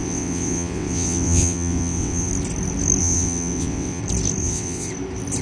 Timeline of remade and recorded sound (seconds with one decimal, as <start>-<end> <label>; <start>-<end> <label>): 0.0-2.3 remade; 2.3-3.0 recorded; 3.0-4.0 remade; 4.0-4.4 recorded; 4.4-4.9 remade; 4.9-5.4 recorded